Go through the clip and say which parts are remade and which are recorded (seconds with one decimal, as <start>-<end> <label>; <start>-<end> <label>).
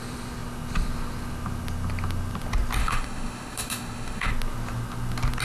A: 0.0-2.8 recorded; 2.8-4.3 remade; 4.3-5.4 recorded